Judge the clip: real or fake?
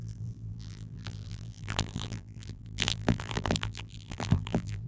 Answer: fake